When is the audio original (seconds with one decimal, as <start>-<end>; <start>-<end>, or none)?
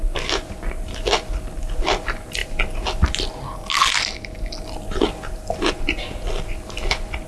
0.0-7.3